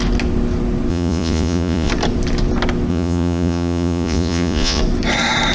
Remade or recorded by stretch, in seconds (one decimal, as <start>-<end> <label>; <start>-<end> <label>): 0.0-0.9 recorded; 0.9-1.9 remade; 1.9-2.9 recorded; 2.9-4.8 remade; 4.8-5.5 recorded